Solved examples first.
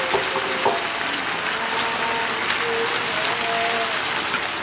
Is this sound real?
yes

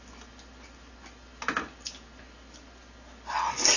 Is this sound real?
yes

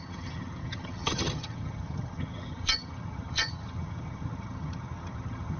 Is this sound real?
no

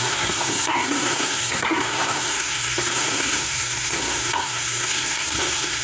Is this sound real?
no